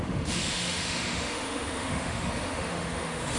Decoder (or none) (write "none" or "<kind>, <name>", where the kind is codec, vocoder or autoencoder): autoencoder, DAC-VAE